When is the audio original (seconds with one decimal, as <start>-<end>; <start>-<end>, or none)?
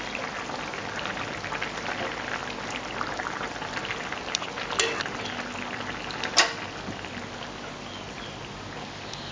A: 0.0-9.3